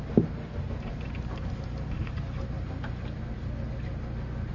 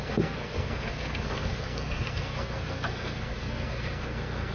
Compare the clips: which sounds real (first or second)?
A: first